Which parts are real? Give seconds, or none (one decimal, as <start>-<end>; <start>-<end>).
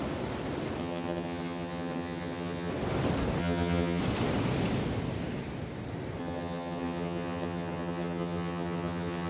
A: 0.0-0.8; 2.7-3.4; 4.0-6.2